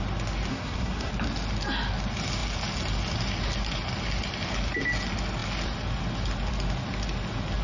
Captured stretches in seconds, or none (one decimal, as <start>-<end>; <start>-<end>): 0.0-0.5; 1.1-7.6